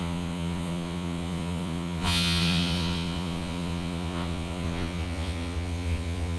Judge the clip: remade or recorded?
remade